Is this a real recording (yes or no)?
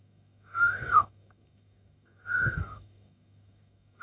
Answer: no